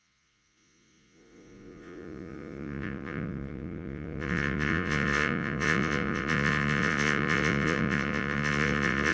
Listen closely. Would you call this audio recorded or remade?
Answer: remade